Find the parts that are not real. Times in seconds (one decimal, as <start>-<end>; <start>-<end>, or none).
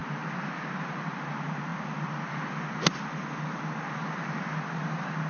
none